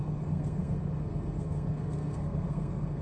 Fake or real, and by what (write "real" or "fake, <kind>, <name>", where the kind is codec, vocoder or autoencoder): fake, codec, SNAC